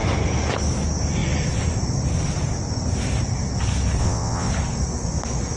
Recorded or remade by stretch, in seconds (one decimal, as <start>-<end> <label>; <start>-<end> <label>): 0.0-4.0 recorded; 4.0-4.5 remade; 4.5-5.6 recorded